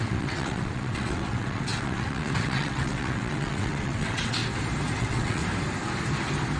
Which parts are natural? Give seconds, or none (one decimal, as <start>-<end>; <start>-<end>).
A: 4.4-5.0; 5.4-6.6